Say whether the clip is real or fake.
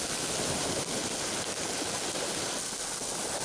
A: real